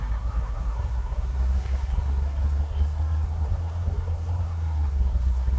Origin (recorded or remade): remade